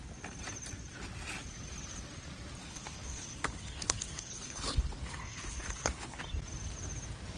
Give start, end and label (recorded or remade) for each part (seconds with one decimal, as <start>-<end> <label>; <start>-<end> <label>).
0.0-2.6 recorded; 2.6-6.2 remade; 6.2-7.4 recorded